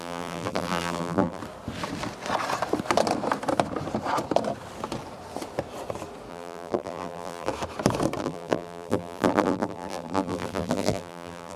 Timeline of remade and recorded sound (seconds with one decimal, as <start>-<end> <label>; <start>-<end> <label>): 0.0-1.4 remade; 1.4-6.3 recorded; 6.3-7.5 remade; 7.5-8.2 recorded; 8.2-11.6 remade

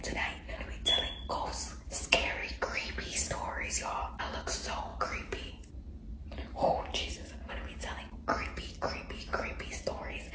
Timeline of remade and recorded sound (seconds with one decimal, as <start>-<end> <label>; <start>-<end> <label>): 0.0-2.4 recorded; 2.4-3.8 remade; 3.8-4.9 recorded; 4.9-5.5 remade; 5.5-10.3 recorded

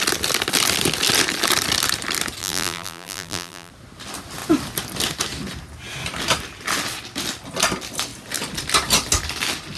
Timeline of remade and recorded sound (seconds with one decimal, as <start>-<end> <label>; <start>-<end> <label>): 0.0-2.4 recorded; 2.4-3.7 remade; 3.7-9.8 recorded

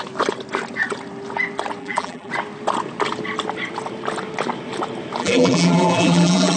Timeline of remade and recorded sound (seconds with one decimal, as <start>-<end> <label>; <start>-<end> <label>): 0.0-1.8 recorded; 1.8-2.3 remade; 2.3-5.2 recorded; 5.2-6.6 remade